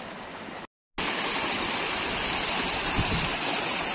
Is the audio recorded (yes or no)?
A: yes